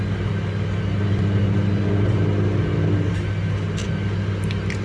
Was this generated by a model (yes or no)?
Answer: no